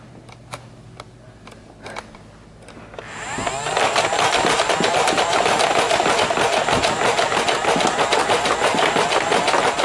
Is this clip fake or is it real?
real